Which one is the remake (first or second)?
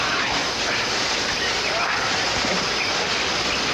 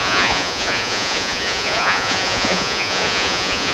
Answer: second